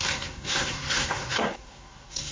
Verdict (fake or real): fake